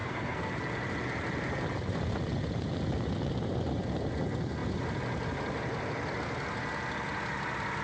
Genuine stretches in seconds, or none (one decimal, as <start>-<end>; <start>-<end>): 0.5-7.8